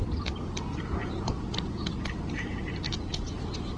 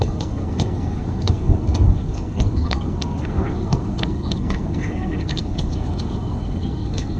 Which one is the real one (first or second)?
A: first